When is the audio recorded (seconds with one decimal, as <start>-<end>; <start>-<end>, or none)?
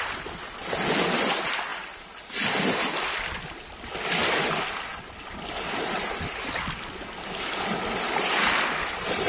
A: 0.0-9.3